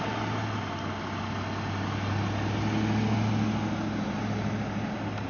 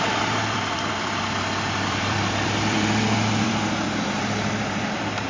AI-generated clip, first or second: second